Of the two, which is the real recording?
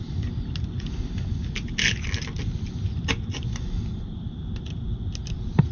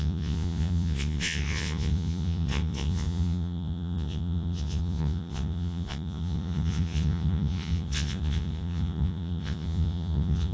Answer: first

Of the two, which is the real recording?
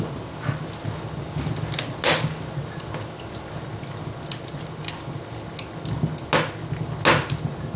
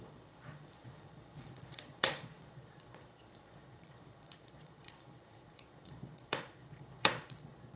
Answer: first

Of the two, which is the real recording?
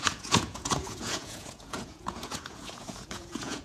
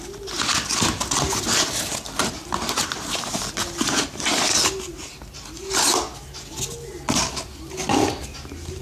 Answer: second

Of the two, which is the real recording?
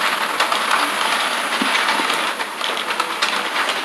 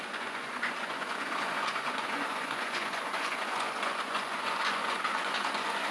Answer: first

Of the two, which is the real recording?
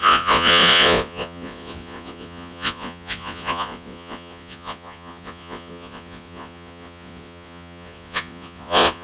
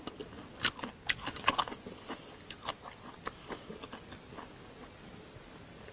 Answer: second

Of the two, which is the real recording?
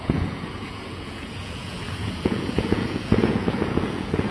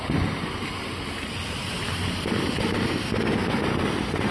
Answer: second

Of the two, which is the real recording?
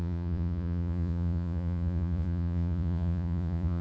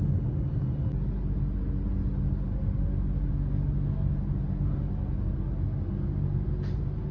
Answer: second